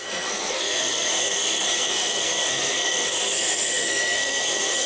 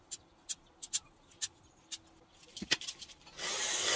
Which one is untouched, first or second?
second